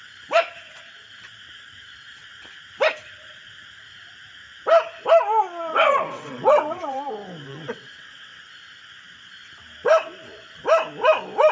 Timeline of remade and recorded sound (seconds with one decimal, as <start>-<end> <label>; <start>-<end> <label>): 0.0-5.7 recorded; 5.7-7.1 remade; 7.1-7.5 recorded; 7.5-8.4 remade; 8.4-11.5 recorded